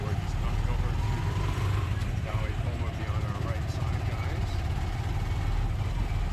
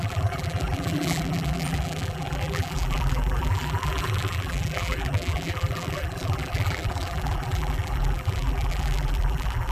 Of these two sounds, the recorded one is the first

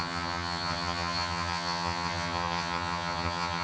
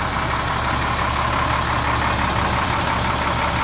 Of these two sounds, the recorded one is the second